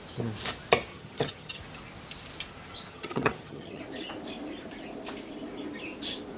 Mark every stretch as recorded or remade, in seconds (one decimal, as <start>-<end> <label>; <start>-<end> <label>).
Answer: 0.0-0.9 recorded; 0.9-1.6 remade; 1.6-2.9 recorded; 2.9-3.8 remade; 3.8-6.4 recorded